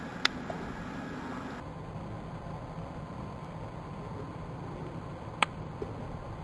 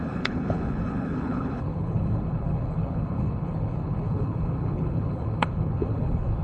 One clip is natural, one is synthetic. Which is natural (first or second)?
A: first